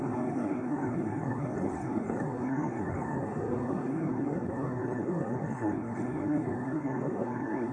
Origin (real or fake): fake